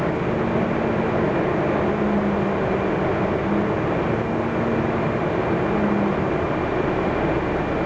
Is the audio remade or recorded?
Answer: recorded